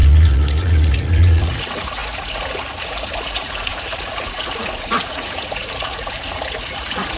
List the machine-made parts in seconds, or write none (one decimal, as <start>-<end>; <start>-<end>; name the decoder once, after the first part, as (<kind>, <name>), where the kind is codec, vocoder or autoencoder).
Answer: 0.0-7.2 (vocoder, Vocos)